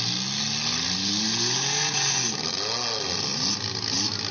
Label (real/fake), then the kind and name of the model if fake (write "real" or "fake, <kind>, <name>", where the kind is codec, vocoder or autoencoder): real